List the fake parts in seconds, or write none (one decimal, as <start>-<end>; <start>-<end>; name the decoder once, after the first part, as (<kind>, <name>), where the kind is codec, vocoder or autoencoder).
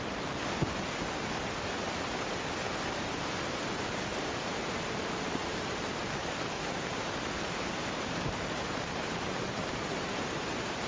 4.1-5.7 (vocoder, BigVGAN v2); 6.2-7.1; 7.8-10.9